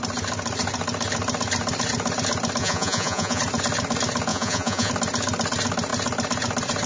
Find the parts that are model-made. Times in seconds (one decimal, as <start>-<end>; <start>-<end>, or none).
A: 2.6-3.4; 4.3-4.9